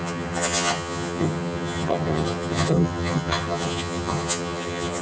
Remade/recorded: remade